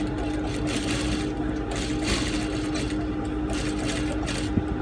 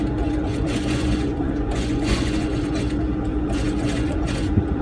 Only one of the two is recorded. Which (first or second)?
first